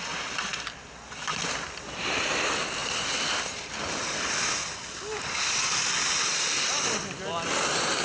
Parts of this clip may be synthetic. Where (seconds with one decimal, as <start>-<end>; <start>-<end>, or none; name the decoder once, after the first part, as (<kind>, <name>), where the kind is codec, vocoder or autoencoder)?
none